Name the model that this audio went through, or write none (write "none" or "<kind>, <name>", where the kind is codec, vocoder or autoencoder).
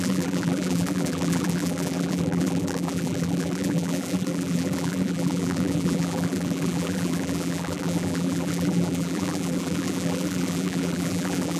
vocoder, BigVGAN v2